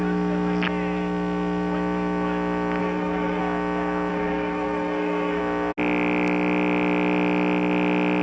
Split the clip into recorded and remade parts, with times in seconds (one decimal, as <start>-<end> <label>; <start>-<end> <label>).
0.0-2.8 recorded; 2.8-3.4 remade; 3.4-4.1 recorded; 4.1-5.4 remade; 5.4-8.2 recorded